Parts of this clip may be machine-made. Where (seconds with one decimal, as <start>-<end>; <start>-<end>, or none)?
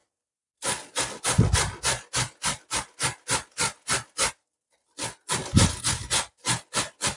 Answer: none